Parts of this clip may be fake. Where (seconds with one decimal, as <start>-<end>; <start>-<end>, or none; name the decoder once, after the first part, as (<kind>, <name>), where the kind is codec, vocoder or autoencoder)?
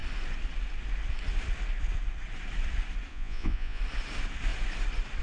3.1-3.8 (vocoder, Vocos)